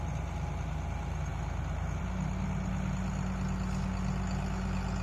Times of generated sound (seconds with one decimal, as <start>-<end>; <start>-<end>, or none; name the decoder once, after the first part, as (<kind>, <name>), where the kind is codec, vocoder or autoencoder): none